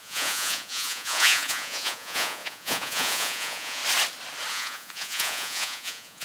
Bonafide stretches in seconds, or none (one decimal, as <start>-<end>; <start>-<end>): 3.8-4.5